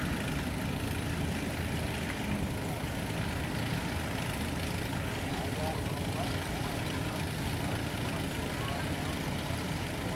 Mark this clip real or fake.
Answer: real